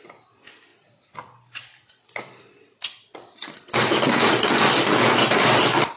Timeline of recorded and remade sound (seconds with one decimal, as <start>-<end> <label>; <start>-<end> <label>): 0.0-0.7 recorded; 0.7-4.3 remade; 4.3-6.0 recorded